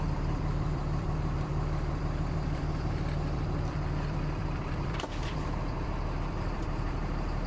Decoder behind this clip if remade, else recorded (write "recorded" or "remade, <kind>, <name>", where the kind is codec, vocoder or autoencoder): remade, vocoder, BigVGAN v2